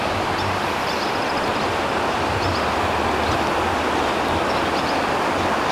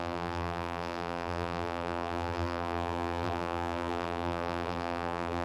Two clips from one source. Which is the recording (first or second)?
first